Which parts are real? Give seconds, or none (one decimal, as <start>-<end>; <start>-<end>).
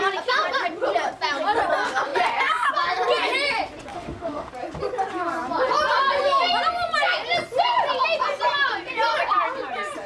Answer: 0.0-3.9; 4.5-10.1